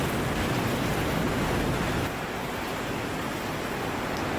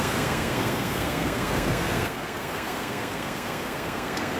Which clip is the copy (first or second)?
second